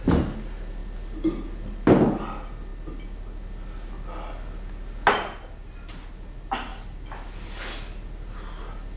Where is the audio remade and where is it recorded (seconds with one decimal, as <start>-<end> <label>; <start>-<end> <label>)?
0.0-9.0 recorded